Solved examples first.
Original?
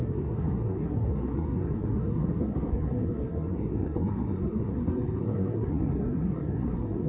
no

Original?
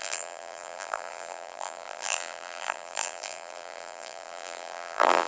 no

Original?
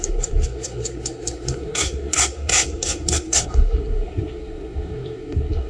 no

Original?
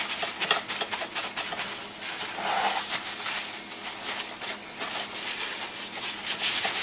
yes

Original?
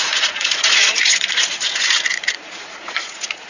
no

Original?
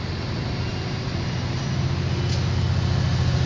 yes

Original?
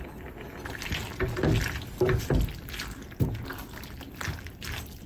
yes